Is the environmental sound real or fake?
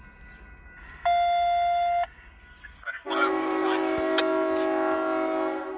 real